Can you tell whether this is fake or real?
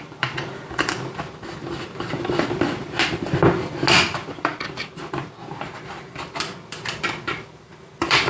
fake